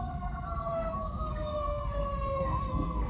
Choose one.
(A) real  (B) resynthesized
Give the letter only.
B